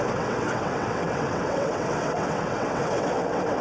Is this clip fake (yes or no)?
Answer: yes